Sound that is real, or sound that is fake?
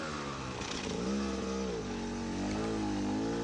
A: real